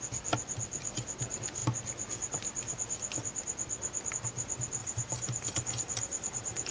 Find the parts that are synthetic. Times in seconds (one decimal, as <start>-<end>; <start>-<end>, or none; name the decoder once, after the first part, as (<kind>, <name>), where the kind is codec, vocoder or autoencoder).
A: 4.8-6.7 (vocoder, BigVGAN v2)